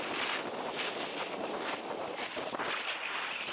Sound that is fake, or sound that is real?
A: real